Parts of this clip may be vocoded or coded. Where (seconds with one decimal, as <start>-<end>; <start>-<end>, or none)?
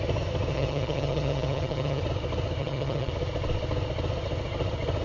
0.5-2.0; 2.6-3.1